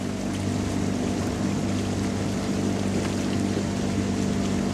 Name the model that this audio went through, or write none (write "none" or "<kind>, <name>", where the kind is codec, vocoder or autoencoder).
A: none